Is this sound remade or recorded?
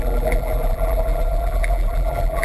remade